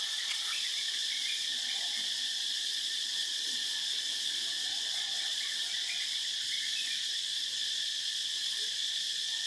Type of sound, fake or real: fake